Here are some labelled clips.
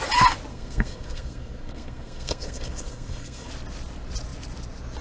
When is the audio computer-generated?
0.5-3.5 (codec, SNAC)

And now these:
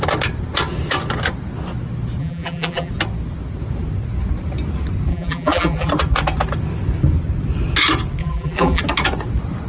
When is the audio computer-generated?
2.2-2.9 (vocoder, BigVGAN v2); 5.1-5.9; 8.2-8.8

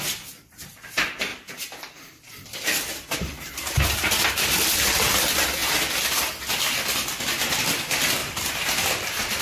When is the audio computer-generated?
1.3-2.2 (vocoder, BigVGAN v2); 8.2-9.4

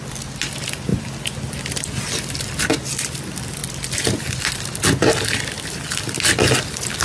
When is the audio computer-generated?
none